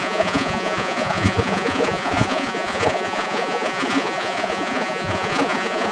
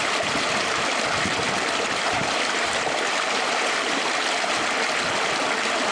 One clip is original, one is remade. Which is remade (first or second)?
first